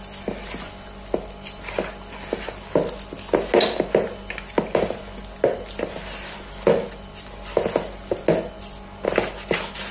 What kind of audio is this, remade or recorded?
recorded